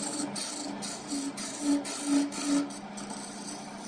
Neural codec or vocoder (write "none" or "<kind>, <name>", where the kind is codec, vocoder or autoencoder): none